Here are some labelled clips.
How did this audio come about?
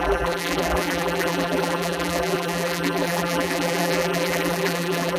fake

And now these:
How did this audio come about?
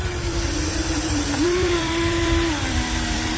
fake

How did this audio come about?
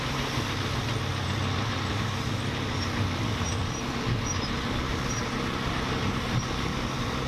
real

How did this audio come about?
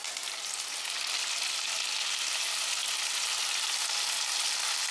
real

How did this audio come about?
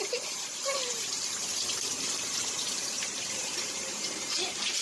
fake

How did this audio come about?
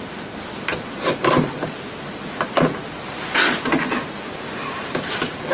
real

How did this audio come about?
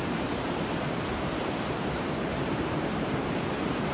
fake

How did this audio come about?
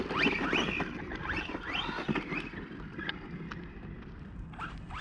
real